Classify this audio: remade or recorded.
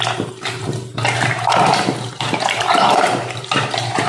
remade